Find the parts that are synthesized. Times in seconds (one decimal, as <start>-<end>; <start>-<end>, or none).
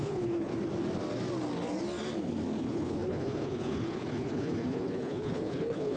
0.0-0.5; 2.6-6.0